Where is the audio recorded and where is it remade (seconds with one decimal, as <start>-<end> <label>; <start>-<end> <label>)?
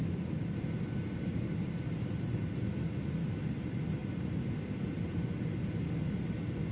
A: 0.0-6.7 recorded